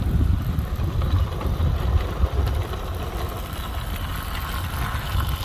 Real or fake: real